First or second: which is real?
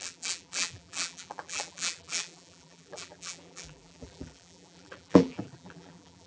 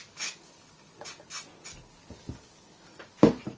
second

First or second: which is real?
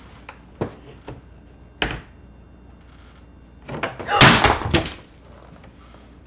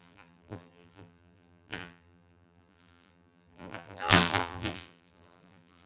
first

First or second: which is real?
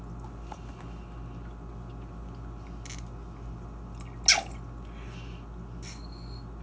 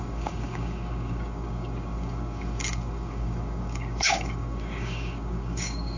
first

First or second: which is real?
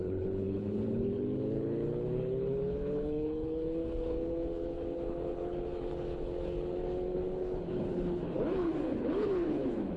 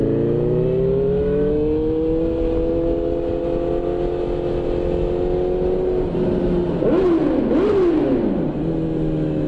second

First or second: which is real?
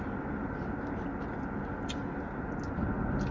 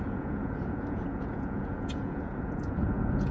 first